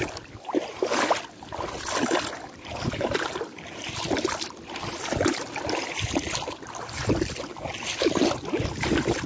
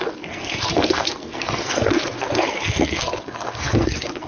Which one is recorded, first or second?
first